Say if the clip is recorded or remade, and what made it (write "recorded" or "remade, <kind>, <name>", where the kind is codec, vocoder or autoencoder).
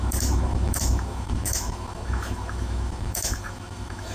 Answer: remade, autoencoder, DAC-VAE